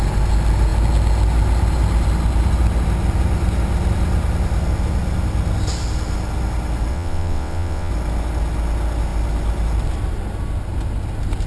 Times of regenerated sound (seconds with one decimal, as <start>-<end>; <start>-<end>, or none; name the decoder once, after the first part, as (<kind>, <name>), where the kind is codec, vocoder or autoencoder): 6.9-7.9 (vocoder, WaveNeXt)

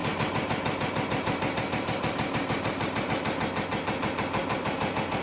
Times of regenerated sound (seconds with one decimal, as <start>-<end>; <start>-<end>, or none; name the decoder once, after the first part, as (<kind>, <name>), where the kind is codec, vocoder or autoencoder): 0.0-3.1 (vocoder, BigVGAN v2); 4.4-5.2

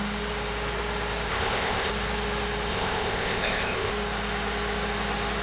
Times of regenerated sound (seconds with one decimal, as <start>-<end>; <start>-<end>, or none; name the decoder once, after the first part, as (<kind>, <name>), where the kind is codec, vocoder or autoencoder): 1.3-1.9 (codec, ZipCodec); 2.7-3.9

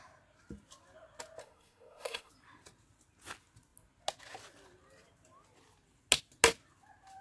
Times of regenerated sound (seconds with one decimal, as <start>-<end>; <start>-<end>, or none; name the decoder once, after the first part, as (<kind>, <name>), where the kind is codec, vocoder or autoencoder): 1.4-2.3 (codec, SNAC)

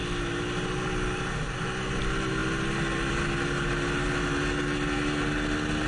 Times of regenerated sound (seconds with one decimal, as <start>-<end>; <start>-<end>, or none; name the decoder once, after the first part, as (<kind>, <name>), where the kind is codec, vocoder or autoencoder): none

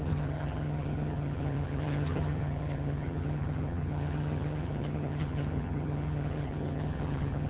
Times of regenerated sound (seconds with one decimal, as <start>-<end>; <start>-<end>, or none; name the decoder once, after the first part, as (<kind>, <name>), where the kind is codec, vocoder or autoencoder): 0.0-7.5 (vocoder, HiFi-GAN)

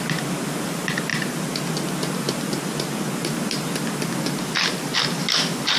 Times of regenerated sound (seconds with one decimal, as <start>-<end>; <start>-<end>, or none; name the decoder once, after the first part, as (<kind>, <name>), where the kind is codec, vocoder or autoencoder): none